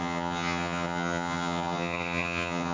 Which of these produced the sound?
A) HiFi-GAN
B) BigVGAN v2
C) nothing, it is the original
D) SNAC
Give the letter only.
A